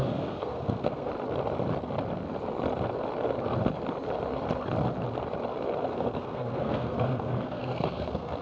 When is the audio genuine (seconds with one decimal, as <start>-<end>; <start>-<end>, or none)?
1.1-5.9

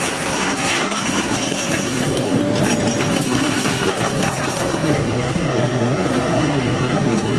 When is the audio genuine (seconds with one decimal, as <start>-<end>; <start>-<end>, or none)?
2.4-3.1